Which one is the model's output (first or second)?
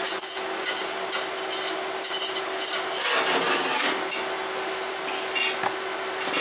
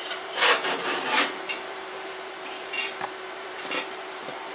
second